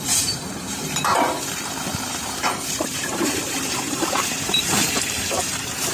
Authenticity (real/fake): fake